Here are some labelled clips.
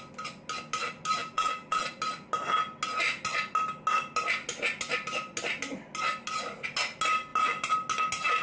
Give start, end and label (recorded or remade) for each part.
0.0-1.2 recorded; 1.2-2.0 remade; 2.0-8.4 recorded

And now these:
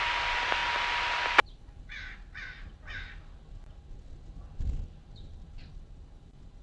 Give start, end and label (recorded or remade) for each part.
0.0-6.6 recorded

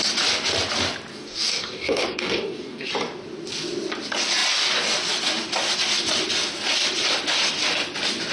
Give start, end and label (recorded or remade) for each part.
0.0-1.1 recorded; 1.1-2.9 remade; 2.9-8.3 recorded

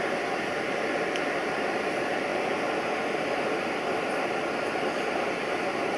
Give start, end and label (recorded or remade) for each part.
0.0-6.0 recorded

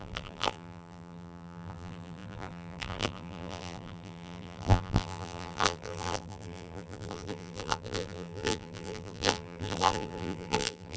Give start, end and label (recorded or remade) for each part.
0.0-11.0 remade

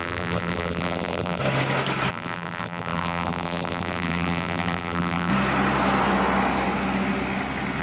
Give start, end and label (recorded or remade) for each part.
0.0-1.4 remade; 1.4-2.1 recorded; 2.1-5.3 remade; 5.3-7.8 recorded

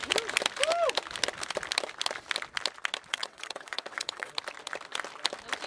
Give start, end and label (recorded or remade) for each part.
0.0-3.1 recorded; 3.1-4.3 remade; 4.3-5.7 recorded

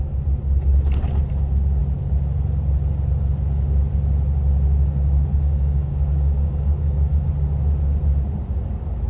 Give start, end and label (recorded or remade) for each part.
0.0-5.3 recorded; 5.3-7.3 remade; 7.3-9.1 recorded